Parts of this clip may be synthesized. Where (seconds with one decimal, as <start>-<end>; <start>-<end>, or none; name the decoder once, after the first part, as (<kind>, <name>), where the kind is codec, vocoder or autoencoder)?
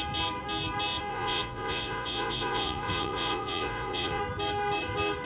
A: 1.1-4.2 (vocoder, Vocos)